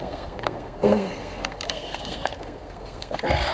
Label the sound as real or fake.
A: fake